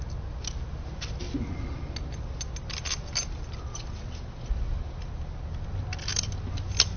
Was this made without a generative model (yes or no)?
yes